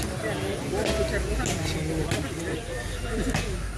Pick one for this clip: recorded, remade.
recorded